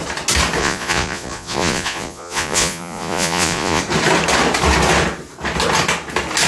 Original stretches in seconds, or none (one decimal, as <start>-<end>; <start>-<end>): 0.0-0.6; 3.8-6.5